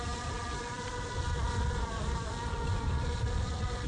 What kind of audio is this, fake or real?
real